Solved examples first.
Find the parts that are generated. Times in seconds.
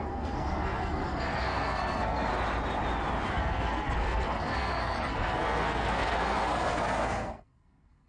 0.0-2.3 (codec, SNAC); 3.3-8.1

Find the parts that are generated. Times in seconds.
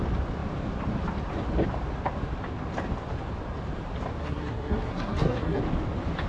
4.2-5.6 (codec, SNAC)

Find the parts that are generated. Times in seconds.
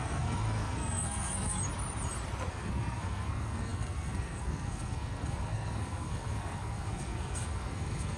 0.0-1.6 (codec, SNAC); 2.5-8.2